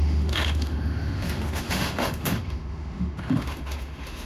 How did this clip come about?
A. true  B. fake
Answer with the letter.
B